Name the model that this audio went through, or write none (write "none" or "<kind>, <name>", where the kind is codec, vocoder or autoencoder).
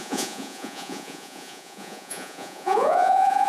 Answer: vocoder, Vocos